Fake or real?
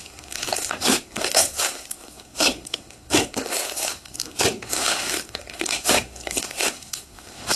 fake